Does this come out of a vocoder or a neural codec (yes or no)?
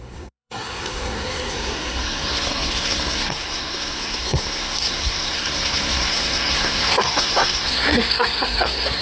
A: yes